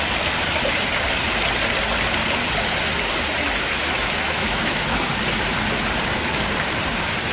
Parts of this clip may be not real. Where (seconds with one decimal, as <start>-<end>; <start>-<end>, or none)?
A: 3.8-5.1